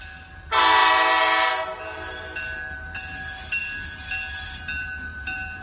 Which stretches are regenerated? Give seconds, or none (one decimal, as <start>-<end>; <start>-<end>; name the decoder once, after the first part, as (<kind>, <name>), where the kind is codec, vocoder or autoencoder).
none